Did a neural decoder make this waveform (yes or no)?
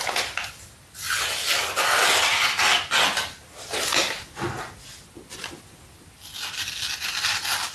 no